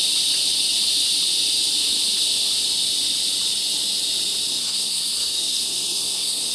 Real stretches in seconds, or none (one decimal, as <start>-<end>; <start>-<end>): 0.0-4.5